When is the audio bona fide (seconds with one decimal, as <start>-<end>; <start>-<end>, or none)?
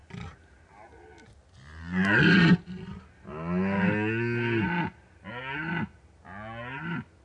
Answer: 0.0-7.2